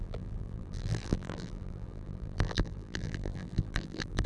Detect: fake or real fake